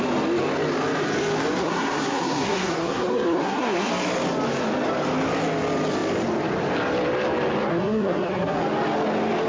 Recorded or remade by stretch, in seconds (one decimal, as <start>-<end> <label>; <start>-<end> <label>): 0.0-1.6 recorded; 1.6-3.9 remade; 3.9-7.7 recorded; 7.7-8.6 remade; 8.6-9.5 recorded